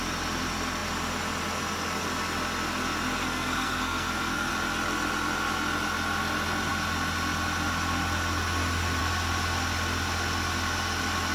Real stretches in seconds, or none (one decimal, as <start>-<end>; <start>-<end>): 0.0-3.2; 4.5-11.3